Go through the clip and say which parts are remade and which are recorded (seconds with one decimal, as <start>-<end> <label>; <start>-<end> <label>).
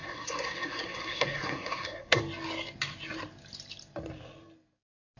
0.0-2.2 remade; 2.2-5.2 recorded